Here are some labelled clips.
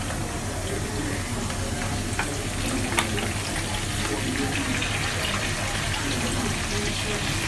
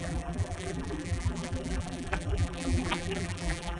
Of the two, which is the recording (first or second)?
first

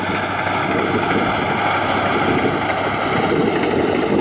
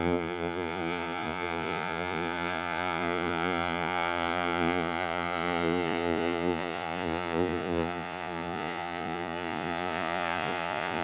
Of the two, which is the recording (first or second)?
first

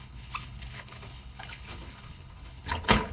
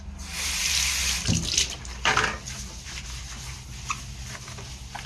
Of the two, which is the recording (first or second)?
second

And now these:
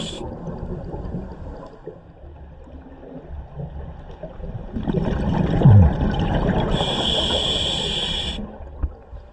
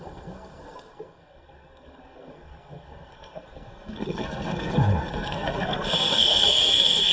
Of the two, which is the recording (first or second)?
first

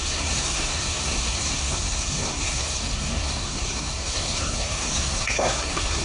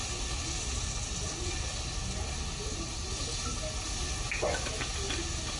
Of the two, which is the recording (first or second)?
second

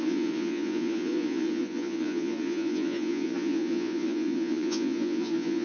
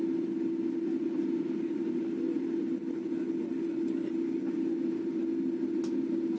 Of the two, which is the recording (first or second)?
second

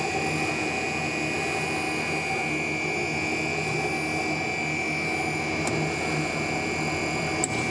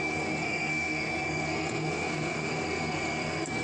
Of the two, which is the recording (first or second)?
first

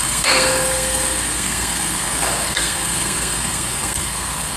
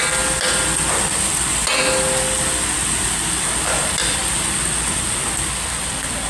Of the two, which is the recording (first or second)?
second